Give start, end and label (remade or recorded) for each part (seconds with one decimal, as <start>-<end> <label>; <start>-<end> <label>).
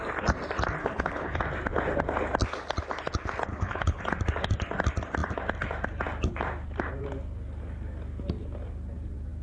0.0-0.8 recorded; 0.8-1.4 remade; 1.4-3.5 recorded; 3.5-4.0 remade; 4.0-9.4 recorded